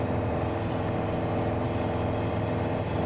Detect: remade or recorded recorded